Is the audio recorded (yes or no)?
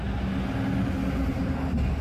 yes